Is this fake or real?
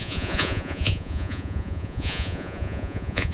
fake